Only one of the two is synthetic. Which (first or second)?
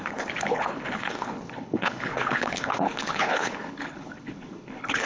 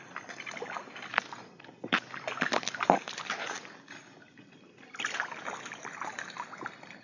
first